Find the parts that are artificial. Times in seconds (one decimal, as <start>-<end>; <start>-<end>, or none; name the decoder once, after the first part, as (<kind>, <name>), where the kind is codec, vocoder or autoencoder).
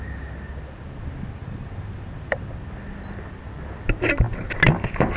1.4-2.4 (vocoder, BigVGAN v2)